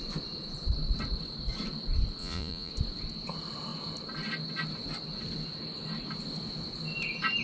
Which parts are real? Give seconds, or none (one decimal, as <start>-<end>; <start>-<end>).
0.0-2.2; 2.7-7.4